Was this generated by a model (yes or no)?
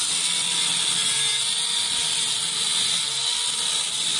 no